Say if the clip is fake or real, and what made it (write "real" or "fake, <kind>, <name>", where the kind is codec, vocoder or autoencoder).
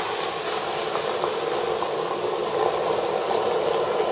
real